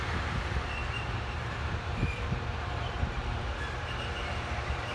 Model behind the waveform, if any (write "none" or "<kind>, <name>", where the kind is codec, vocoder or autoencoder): vocoder, BigVGAN v2